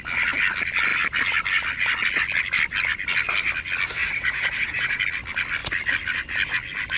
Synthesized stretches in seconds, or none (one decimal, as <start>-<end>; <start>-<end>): 4.0-5.0